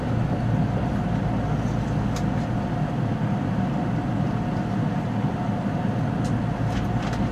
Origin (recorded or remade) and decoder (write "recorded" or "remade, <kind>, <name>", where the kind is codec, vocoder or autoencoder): recorded